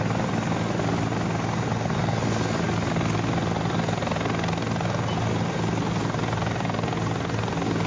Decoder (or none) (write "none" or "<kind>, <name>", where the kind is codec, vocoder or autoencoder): none